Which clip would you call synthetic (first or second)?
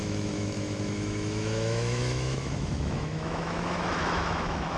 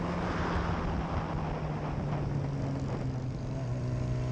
first